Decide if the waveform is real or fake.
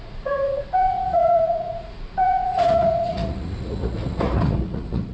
fake